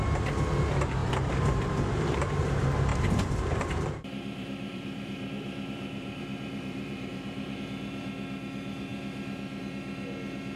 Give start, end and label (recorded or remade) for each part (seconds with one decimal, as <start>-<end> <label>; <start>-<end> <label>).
0.0-1.0 recorded; 1.0-2.4 remade; 2.4-2.9 recorded; 2.9-7.6 remade; 7.6-10.6 recorded